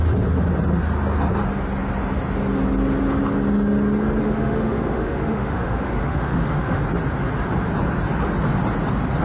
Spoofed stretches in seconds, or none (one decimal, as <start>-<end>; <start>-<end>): 4.2-6.8